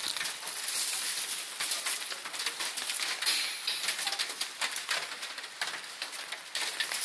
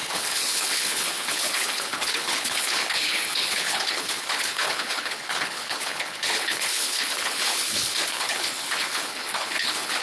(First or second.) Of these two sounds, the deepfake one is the second